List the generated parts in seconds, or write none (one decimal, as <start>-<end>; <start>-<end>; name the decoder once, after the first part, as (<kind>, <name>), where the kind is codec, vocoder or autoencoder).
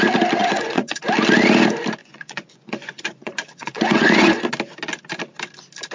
0.4-1.0 (vocoder, Vocos); 2.0-4.4